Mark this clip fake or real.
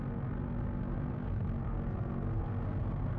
fake